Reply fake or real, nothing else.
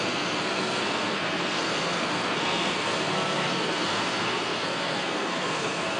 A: fake